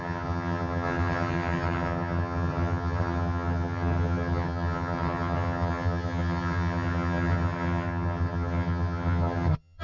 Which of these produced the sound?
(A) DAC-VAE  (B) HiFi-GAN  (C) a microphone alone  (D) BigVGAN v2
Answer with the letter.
B